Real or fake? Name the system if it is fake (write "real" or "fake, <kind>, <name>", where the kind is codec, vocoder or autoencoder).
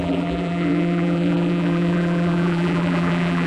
fake, vocoder, BigVGAN v2